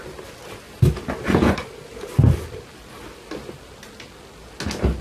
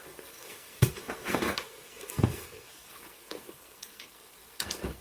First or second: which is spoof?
second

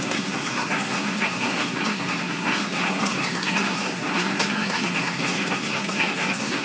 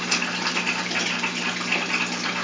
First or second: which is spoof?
first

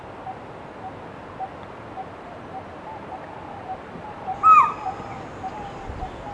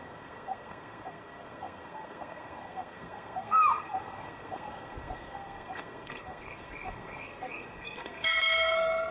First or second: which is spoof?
second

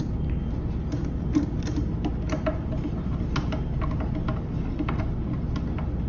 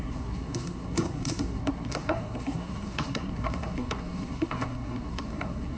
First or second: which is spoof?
second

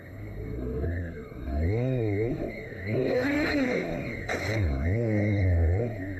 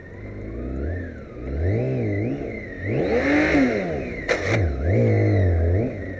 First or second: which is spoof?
first